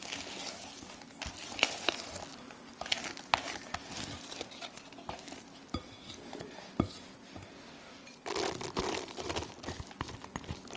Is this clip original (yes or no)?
yes